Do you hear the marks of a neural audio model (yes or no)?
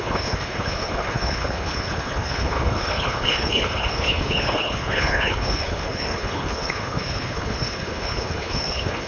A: yes